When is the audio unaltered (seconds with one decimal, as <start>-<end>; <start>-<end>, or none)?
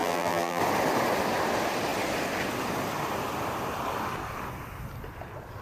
0.6-5.6